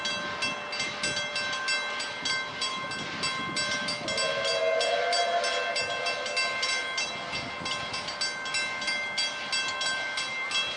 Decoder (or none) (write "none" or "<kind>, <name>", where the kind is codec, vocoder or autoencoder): none